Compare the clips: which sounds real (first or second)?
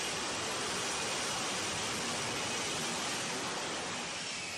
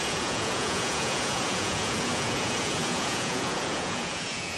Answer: first